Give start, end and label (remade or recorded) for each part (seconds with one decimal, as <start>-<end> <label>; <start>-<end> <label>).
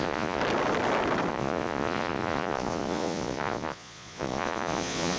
0.0-0.4 remade; 0.4-1.3 recorded; 1.3-5.2 remade